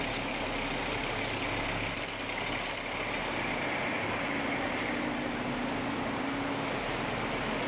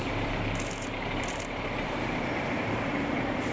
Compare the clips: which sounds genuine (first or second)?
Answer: first